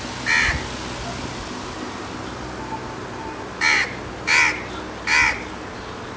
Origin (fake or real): real